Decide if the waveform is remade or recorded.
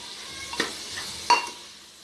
recorded